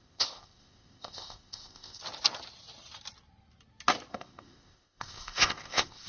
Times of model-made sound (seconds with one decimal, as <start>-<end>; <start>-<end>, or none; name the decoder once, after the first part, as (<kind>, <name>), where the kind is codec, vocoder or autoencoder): 0.0-2.0 (codec, ZipCodec); 4.1-6.1